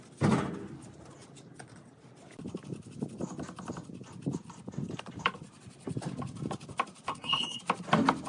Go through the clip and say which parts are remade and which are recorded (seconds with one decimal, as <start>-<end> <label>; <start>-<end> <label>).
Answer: 0.0-7.1 recorded; 7.1-7.6 remade; 7.6-8.3 recorded